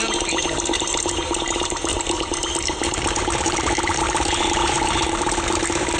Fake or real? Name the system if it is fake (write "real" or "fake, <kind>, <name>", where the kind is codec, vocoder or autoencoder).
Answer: fake, vocoder, BigVGAN v2